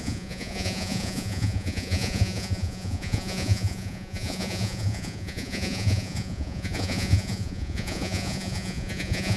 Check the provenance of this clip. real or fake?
fake